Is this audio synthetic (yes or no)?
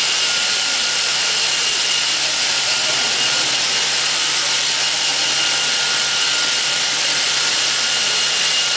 yes